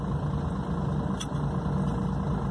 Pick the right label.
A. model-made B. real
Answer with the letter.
B